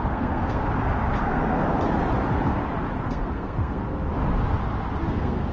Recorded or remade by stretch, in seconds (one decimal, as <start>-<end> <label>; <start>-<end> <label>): 0.0-0.6 remade; 0.6-1.2 recorded; 1.2-1.6 remade; 1.6-3.0 recorded; 3.0-3.8 remade; 3.8-5.1 recorded; 5.1-5.5 remade